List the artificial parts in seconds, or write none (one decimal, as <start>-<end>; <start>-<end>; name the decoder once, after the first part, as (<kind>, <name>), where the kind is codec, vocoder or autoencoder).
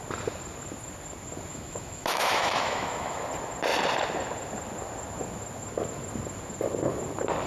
1.5-3.2 (autoencoder, DAC-VAE)